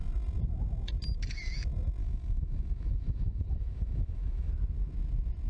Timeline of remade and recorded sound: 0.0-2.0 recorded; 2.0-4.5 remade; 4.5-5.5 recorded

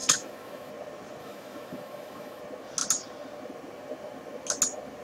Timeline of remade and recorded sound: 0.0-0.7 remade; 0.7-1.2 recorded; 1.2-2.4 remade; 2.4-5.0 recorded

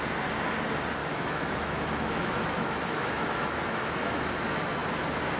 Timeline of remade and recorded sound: 0.0-1.0 recorded; 1.0-4.2 remade; 4.2-5.4 recorded

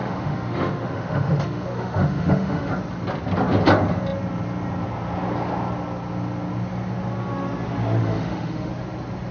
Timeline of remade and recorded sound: 0.0-2.7 remade; 2.7-8.0 recorded; 8.0-8.7 remade; 8.7-9.3 recorded

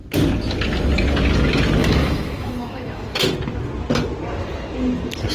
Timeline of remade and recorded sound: 0.0-1.8 recorded; 1.8-3.3 remade; 3.3-5.3 recorded